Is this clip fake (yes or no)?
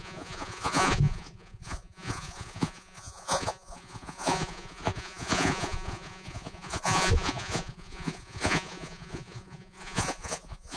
yes